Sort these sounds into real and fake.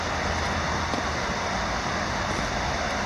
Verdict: real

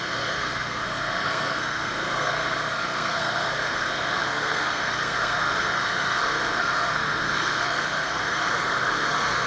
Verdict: fake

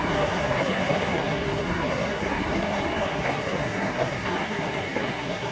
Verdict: fake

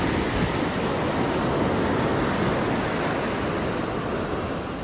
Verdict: real